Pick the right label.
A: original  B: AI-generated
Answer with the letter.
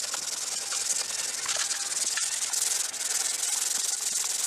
A